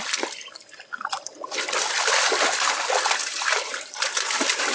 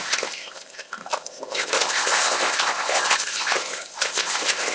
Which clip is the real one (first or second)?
first